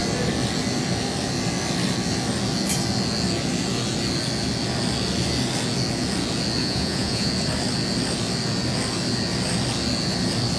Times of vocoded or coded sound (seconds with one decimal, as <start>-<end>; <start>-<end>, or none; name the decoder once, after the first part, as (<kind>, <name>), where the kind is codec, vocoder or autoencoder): 6.6-7.3 (vocoder, Vocos)